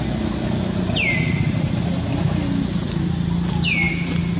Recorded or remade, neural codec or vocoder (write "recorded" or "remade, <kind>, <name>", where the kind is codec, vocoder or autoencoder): recorded